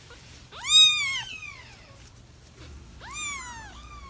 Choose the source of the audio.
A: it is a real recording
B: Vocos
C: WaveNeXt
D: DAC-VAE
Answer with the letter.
A